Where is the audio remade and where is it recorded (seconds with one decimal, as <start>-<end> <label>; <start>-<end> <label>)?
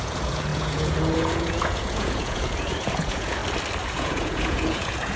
0.0-3.4 remade; 3.4-3.9 recorded; 3.9-5.2 remade